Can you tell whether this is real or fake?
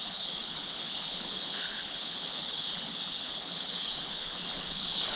fake